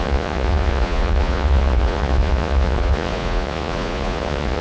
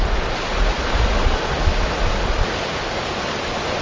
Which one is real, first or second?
second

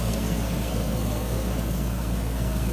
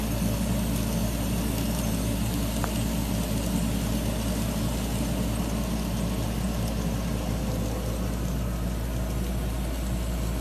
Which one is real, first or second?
second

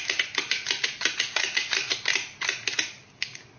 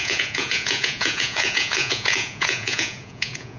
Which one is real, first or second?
first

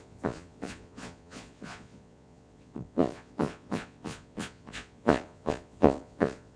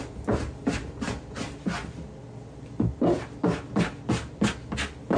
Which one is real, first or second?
second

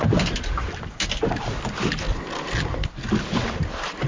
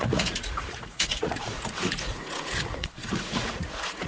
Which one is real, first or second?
first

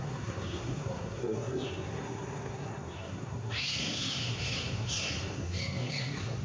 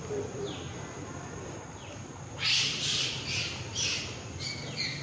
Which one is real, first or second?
second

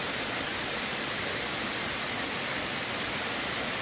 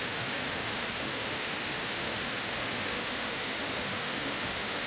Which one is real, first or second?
first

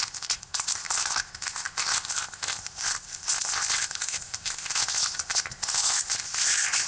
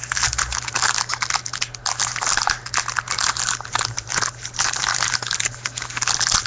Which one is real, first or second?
second